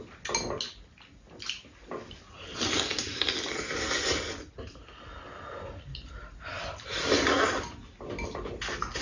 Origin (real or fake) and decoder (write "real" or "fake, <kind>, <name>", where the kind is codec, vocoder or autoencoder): real